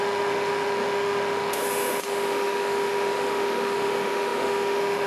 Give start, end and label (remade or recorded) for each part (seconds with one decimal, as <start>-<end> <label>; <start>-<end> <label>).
0.0-5.1 remade